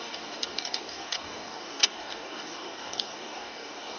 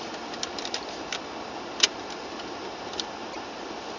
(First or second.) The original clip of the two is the second